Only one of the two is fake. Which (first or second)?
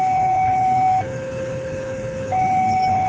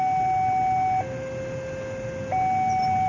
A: first